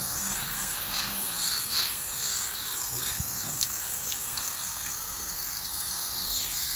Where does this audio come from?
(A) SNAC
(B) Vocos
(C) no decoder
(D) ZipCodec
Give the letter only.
A